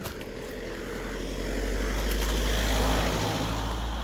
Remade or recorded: recorded